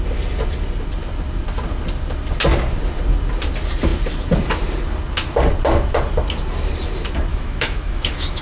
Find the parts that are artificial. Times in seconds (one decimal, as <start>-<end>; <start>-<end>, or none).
7.3-8.4